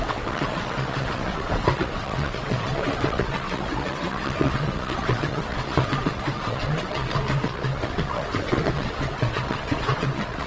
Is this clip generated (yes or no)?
yes